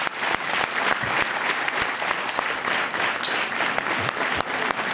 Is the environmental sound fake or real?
real